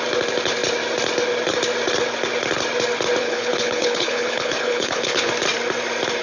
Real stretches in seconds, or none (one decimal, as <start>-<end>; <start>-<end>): 0.0-3.2; 5.3-6.2

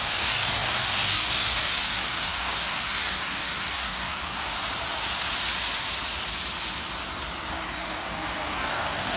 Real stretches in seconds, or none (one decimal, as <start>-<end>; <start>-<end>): 4.5-7.5

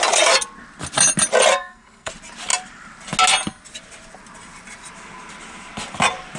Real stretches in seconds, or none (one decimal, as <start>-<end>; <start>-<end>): 0.0-1.5; 2.1-6.4

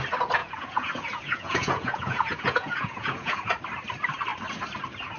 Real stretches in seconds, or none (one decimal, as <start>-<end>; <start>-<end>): 0.0-0.4; 3.5-5.2

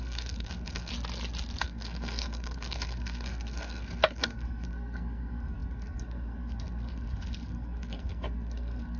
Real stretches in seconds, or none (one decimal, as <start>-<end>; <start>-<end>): 0.9-1.6